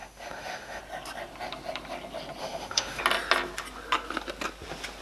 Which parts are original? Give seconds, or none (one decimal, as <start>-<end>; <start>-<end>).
0.8-2.4; 3.0-5.0